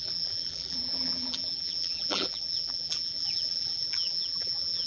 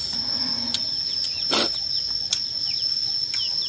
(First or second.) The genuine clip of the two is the second